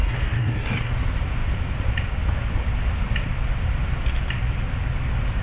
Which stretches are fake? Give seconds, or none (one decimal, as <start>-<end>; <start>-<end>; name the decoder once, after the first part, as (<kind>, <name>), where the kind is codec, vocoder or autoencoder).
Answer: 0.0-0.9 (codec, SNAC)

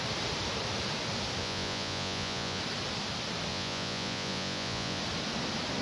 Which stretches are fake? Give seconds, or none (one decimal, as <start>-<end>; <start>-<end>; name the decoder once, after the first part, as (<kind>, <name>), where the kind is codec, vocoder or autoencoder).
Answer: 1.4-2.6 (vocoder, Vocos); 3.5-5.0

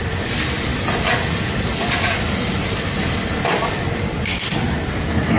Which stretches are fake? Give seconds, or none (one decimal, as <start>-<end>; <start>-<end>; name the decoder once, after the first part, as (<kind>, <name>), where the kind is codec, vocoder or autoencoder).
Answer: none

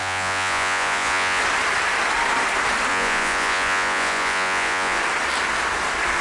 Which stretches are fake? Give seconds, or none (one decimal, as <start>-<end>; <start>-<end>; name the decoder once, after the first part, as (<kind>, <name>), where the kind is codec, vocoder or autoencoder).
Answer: 0.0-1.4 (vocoder, Vocos); 2.9-5.0